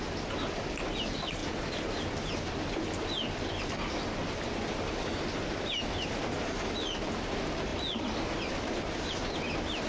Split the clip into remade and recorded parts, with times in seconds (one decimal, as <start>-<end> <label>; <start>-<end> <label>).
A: 0.0-9.9 recorded